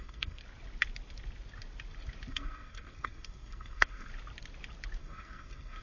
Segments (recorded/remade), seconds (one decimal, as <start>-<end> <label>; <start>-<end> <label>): 0.0-0.4 remade; 0.4-2.3 recorded; 2.3-4.1 remade; 4.1-5.0 recorded; 5.0-5.8 remade